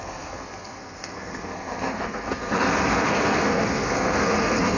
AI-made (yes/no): yes